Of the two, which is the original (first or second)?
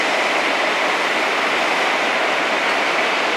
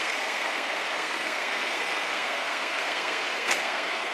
first